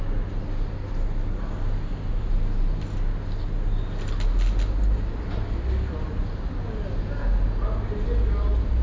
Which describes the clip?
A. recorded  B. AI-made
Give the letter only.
A